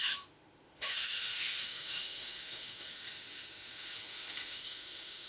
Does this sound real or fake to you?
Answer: fake